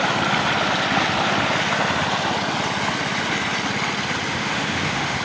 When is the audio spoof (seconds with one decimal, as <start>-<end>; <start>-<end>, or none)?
4.3-5.2